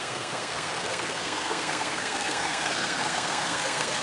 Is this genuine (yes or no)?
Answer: no